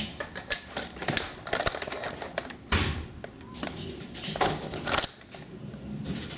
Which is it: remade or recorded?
recorded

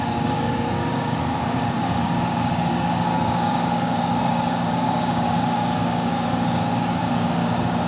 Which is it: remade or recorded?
remade